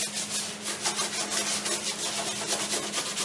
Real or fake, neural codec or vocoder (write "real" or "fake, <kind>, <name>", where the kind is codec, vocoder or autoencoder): real